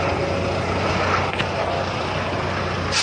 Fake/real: real